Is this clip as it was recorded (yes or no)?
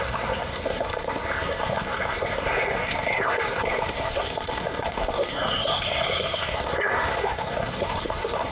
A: no